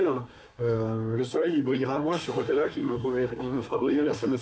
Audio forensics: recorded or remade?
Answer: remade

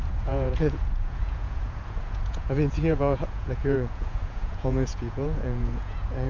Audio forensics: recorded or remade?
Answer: remade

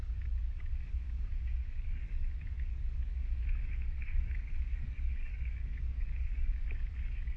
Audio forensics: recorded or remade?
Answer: remade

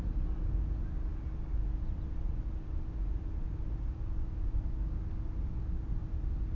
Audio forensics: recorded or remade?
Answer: recorded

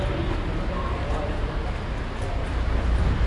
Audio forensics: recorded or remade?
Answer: recorded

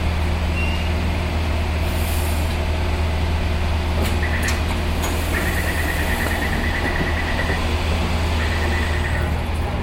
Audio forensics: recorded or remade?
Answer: recorded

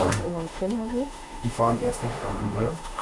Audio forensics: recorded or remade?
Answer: remade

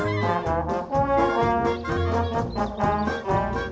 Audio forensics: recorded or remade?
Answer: recorded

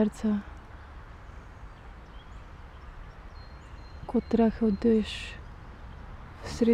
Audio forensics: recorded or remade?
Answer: recorded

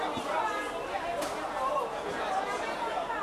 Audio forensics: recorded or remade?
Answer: recorded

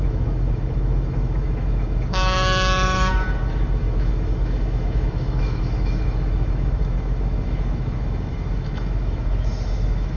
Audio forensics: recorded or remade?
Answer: remade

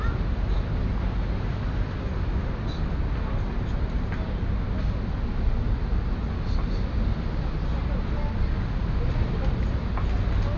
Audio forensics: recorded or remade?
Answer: recorded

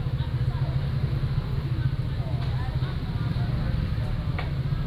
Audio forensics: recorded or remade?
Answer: recorded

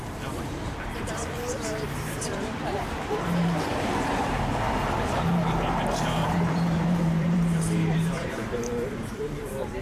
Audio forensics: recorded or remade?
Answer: remade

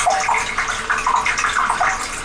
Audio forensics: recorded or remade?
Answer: recorded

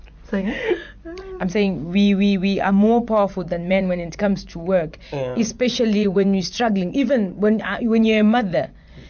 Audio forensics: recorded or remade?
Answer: remade